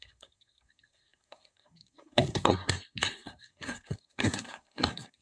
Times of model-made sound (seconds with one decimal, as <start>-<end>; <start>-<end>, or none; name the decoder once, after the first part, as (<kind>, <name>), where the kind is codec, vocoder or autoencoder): 0.0-5.2 (codec, SNAC)